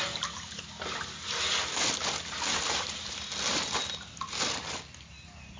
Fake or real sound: real